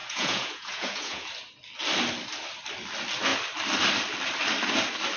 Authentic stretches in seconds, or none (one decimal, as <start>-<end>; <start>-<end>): 1.3-5.2